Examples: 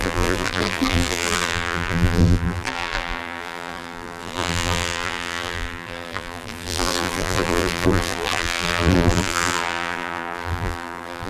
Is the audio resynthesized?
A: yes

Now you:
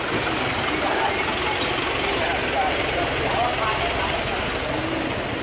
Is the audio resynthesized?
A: no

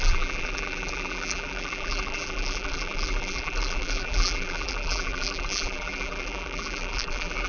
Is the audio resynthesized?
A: yes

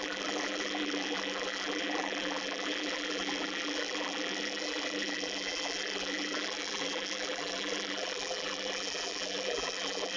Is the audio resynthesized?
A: yes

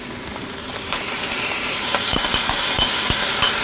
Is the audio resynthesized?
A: yes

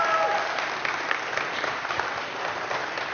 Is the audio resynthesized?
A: yes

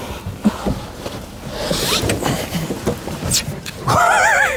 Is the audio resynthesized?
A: no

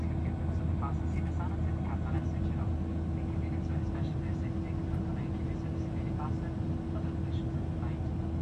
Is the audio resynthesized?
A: no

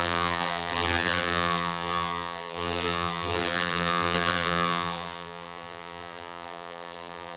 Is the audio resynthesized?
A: yes